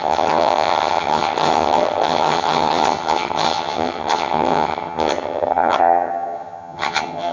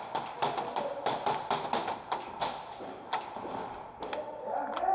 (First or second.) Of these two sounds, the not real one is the first